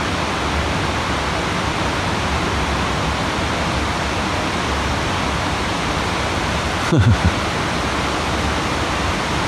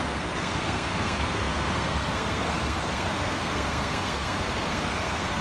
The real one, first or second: first